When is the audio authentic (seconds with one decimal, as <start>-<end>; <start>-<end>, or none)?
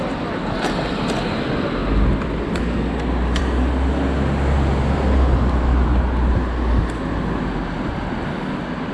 0.0-8.9